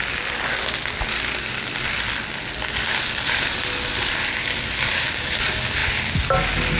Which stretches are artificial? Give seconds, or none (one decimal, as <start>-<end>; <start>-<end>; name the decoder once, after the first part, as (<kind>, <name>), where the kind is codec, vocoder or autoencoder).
none